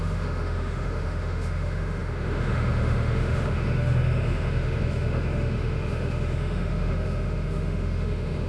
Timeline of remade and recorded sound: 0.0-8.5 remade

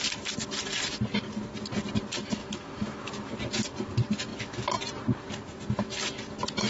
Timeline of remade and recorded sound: 0.0-2.4 recorded; 2.4-3.1 remade; 3.1-6.7 recorded

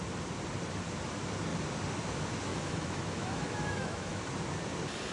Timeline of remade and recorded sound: 0.0-2.5 recorded; 2.5-4.2 remade; 4.2-5.1 recorded

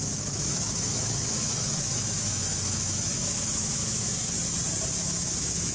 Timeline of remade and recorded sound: 0.0-4.1 remade; 4.1-5.0 recorded; 5.0-5.7 remade

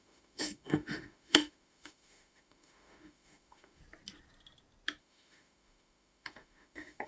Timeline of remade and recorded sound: 0.0-3.8 remade; 3.8-5.0 recorded; 5.0-7.1 remade